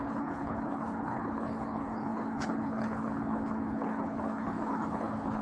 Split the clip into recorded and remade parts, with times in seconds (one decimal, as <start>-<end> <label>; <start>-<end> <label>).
0.0-5.4 remade